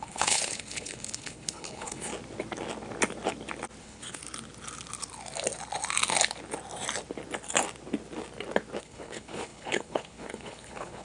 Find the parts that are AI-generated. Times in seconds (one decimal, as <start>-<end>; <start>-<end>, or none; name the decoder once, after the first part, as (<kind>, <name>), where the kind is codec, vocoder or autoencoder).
0.0-2.1 (codec, HILCodec); 3.8-4.2; 8.8-11.0